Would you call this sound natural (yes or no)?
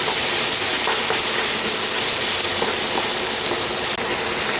yes